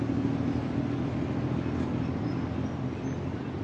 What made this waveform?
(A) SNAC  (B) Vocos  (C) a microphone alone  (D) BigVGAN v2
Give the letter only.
C